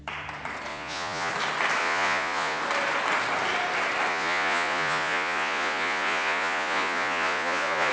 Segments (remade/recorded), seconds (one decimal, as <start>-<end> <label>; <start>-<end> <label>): 0.0-0.7 recorded; 0.7-1.3 remade; 1.3-1.8 recorded; 1.8-2.6 remade; 2.6-4.1 recorded; 4.1-7.9 remade